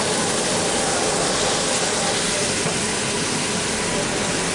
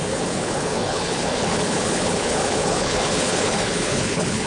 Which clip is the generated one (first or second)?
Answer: second